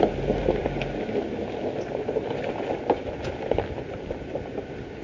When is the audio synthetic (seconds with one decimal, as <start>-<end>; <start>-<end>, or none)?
none